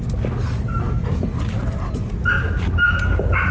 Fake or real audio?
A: real